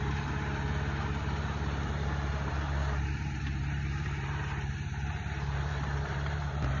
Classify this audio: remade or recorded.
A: remade